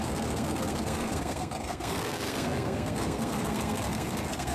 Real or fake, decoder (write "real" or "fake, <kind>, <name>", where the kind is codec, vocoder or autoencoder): fake, codec, SNAC